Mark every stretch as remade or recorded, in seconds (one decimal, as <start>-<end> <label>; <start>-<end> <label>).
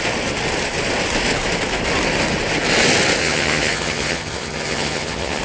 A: 0.0-3.2 recorded; 3.2-5.4 remade